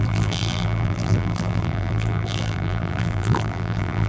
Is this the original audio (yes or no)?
no